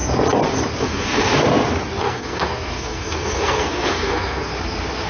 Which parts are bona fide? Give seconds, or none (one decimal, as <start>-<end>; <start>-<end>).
0.0-0.8; 1.3-2.0; 4.5-5.1